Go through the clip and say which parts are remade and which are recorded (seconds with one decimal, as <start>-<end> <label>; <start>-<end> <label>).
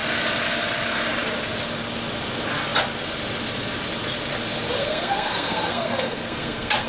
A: 0.0-4.8 recorded; 4.8-6.9 remade